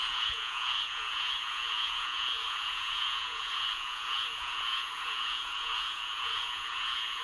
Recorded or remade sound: remade